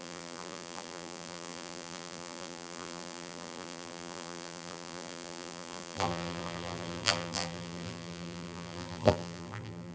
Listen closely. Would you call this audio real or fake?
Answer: fake